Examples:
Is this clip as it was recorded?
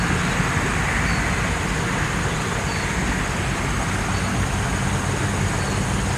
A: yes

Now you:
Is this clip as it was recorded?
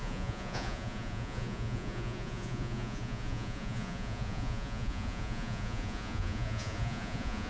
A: no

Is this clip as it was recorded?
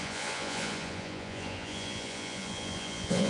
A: no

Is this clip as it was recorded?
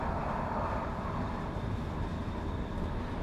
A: yes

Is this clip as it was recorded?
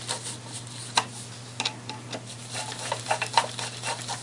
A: yes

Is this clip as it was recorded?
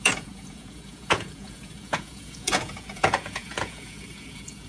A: no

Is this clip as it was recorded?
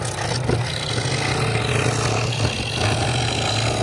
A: yes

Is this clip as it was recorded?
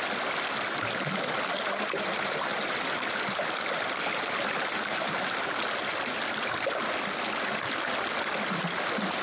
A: yes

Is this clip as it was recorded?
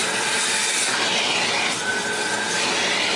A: yes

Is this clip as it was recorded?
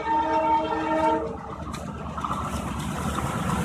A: yes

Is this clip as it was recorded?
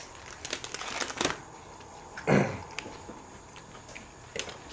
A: yes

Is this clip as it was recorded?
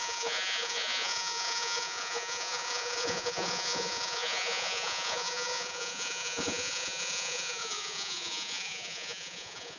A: no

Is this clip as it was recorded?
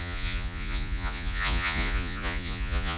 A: no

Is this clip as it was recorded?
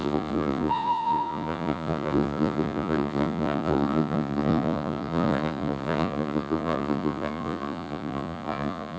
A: no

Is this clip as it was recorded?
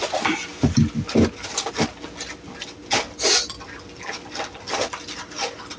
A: yes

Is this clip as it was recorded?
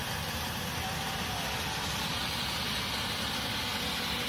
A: yes